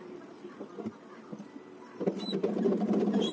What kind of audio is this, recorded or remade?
recorded